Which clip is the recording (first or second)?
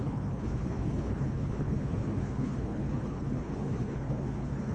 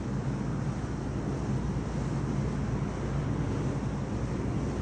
second